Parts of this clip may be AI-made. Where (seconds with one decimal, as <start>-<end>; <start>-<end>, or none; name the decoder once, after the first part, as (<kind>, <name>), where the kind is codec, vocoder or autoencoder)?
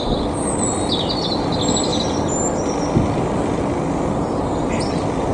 none